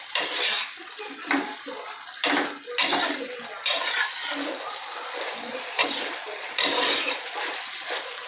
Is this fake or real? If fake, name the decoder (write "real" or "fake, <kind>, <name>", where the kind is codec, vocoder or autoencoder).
fake, vocoder, BigVGAN v2